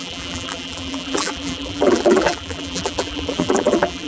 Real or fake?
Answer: fake